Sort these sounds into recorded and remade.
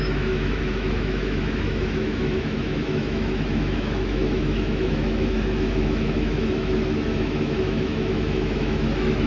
remade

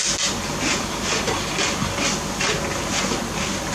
recorded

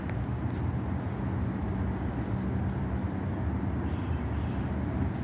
recorded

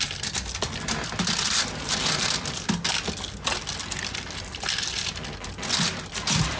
recorded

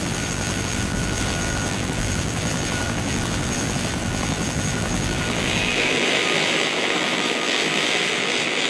remade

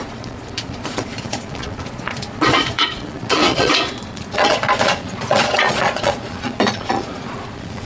remade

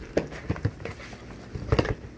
recorded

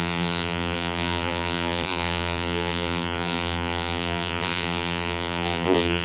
remade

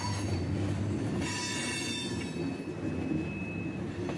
recorded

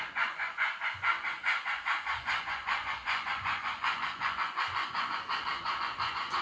remade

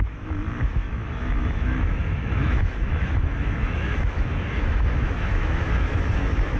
remade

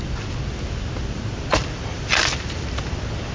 recorded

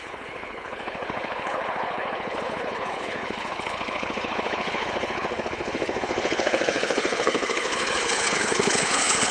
remade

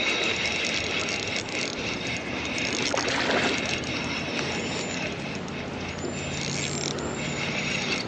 recorded